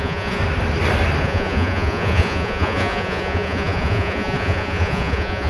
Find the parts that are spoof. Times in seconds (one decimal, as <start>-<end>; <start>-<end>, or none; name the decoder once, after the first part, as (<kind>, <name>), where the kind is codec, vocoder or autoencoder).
0.0-0.4 (vocoder, Vocos); 1.2-5.5